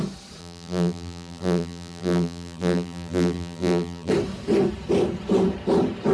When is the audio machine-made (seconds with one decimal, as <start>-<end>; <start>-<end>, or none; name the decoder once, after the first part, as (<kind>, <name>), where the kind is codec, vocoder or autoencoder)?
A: 0.4-4.1 (vocoder, BigVGAN v2)